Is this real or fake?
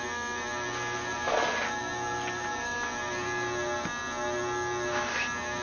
real